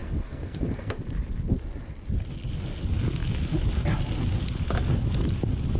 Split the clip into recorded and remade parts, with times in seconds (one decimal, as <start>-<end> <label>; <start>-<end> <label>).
0.0-1.0 remade; 1.0-5.8 recorded